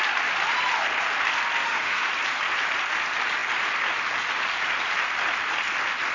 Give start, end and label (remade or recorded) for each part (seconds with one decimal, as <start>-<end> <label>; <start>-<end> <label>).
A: 0.0-1.6 recorded; 1.6-2.1 remade; 2.1-6.1 recorded